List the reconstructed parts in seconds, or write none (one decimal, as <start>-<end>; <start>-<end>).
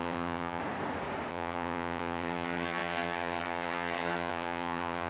0.0-0.6; 1.3-5.1